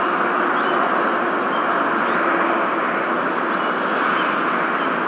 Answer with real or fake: real